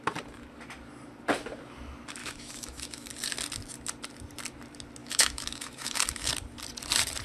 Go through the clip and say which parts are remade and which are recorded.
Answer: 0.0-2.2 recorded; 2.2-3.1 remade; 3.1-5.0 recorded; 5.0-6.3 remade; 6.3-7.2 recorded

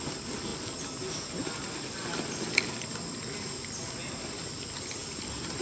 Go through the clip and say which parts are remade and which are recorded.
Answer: 0.0-5.6 recorded